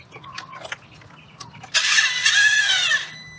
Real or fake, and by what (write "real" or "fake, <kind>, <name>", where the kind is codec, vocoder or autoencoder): real